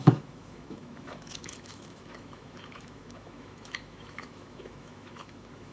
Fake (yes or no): yes